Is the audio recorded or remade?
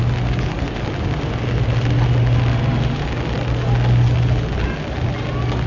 recorded